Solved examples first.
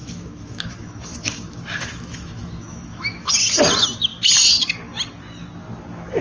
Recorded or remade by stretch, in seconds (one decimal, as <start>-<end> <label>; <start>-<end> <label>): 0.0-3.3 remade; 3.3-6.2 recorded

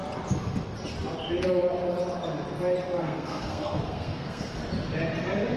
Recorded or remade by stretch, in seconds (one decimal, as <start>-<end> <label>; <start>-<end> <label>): 0.0-3.0 recorded; 3.0-4.6 remade; 4.6-5.6 recorded

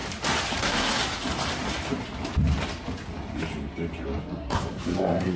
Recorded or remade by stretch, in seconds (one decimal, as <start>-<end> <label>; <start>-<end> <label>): 0.0-0.6 recorded; 0.6-1.0 remade; 1.0-4.2 recorded; 4.2-5.4 remade

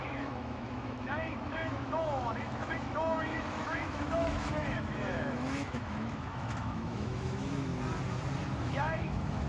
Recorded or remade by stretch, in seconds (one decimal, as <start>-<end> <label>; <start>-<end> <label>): 0.0-7.7 remade; 7.7-8.6 recorded; 8.6-9.5 remade

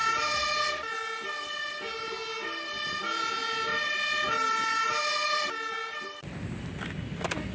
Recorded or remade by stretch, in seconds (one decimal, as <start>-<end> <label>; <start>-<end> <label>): 0.0-7.5 recorded

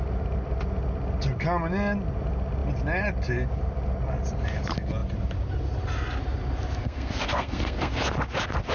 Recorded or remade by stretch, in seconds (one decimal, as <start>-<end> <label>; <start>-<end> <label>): 0.0-6.8 recorded; 6.8-8.0 remade; 8.0-8.7 recorded

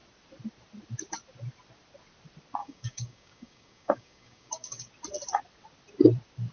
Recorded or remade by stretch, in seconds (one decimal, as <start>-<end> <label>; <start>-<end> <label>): 0.0-2.6 recorded; 2.6-4.9 remade; 4.9-6.5 recorded

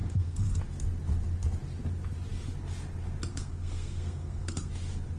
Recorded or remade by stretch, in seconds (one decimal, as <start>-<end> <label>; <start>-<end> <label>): 0.0-0.6 remade; 0.6-3.3 recorded; 3.3-4.7 remade; 4.7-5.2 recorded